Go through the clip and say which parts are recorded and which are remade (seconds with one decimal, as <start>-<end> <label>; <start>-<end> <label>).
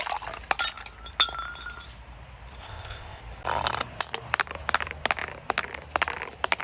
0.0-2.6 recorded; 2.6-3.2 remade; 3.2-6.6 recorded